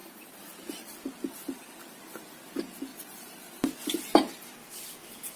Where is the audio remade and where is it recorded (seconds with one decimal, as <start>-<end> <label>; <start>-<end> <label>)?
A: 0.0-0.7 remade; 0.7-2.9 recorded; 2.9-4.3 remade; 4.3-5.4 recorded